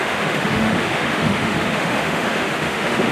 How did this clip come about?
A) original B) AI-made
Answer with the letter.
B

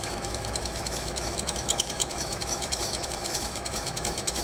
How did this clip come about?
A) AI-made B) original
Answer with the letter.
A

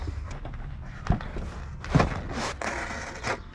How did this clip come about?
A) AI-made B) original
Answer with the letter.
B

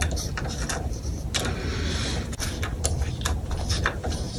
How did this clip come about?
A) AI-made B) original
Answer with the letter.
B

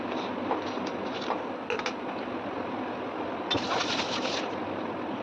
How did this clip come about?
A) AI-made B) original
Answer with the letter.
B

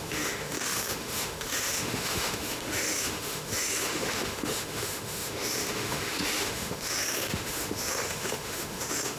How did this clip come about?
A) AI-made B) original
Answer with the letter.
A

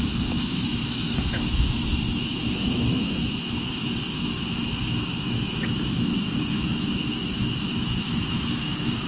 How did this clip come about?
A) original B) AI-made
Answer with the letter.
B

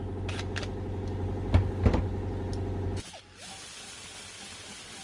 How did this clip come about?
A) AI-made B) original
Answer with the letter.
B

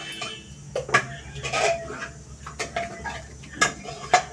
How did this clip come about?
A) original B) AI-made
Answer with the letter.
A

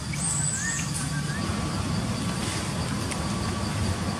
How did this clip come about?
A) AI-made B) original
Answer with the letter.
B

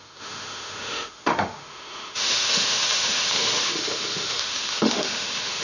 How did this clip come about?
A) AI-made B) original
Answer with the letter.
A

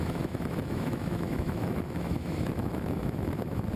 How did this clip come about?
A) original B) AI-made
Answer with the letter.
B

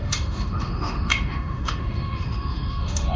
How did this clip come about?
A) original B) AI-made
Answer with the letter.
B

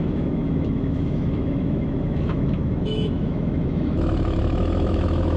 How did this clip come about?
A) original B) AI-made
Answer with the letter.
B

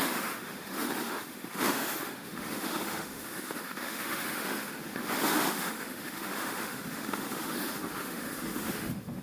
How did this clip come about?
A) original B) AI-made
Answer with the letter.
B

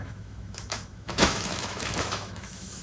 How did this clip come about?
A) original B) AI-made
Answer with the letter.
B